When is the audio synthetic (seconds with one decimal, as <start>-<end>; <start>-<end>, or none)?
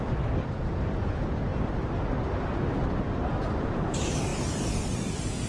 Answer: none